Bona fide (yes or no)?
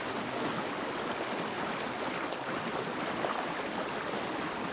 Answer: yes